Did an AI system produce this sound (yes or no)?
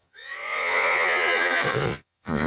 yes